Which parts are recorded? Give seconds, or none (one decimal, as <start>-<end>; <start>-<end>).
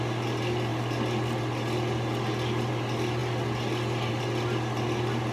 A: 0.0-5.3